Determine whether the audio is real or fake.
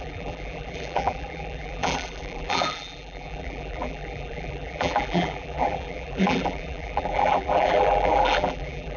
fake